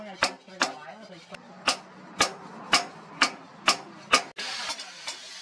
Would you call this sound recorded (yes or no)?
yes